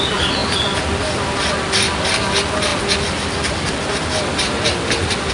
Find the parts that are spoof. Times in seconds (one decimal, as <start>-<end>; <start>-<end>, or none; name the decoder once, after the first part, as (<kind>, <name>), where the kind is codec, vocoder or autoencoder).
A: none